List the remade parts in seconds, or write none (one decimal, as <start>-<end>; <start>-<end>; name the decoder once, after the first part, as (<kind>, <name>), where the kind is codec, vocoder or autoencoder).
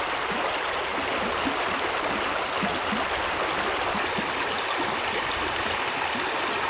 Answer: none